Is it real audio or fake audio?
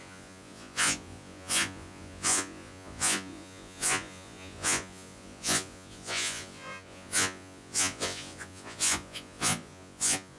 fake